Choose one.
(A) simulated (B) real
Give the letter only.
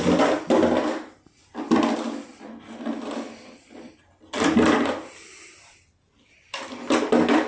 B